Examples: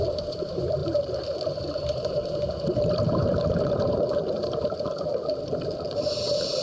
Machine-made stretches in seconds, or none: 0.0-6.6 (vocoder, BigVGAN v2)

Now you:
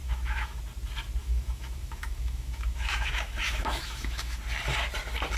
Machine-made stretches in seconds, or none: 0.0-0.6 (autoencoder, DAC-VAE); 1.2-4.4

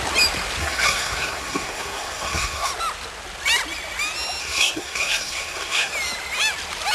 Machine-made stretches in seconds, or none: 0.6-2.7 (codec, SNAC); 4.4-5.9

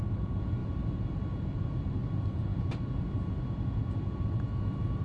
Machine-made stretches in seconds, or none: none

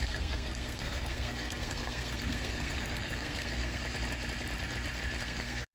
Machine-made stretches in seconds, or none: 0.0-3.8 (codec, SNAC); 5.2-5.7

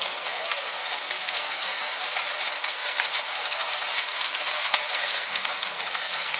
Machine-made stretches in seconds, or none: 0.0-1.9 (codec, SNAC); 2.5-6.4

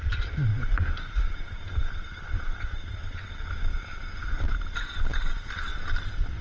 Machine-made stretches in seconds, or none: 0.0-0.5 (vocoder, BigVGAN v2); 3.6-6.4